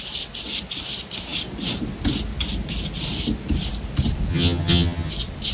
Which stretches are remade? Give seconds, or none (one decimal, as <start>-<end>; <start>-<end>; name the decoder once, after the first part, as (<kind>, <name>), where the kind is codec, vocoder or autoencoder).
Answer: 4.3-5.1 (vocoder, HiFi-GAN)